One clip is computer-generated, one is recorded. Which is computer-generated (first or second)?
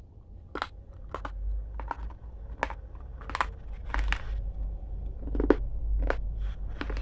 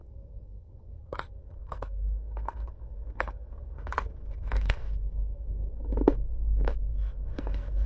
second